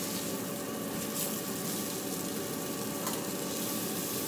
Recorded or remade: recorded